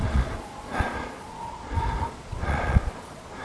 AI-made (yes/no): yes